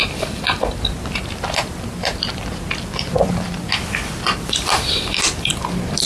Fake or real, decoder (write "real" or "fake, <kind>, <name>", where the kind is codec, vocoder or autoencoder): fake, vocoder, BigVGAN v2